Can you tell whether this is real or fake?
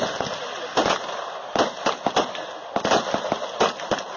real